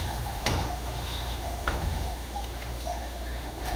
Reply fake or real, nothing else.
fake